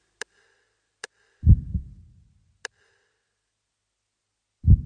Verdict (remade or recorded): recorded